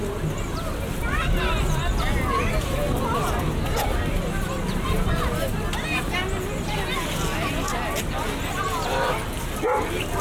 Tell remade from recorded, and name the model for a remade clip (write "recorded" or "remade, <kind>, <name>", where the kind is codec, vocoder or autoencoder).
recorded